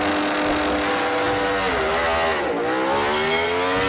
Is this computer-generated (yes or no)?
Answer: no